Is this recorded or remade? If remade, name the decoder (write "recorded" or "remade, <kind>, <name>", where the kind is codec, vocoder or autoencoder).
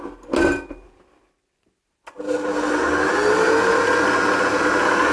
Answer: recorded